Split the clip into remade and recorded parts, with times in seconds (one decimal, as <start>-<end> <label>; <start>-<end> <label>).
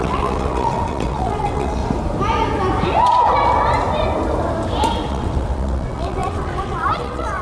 0.0-1.8 remade; 1.8-5.1 recorded; 5.1-7.4 remade